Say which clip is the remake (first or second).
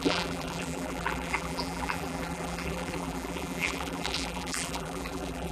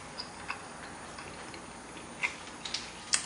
first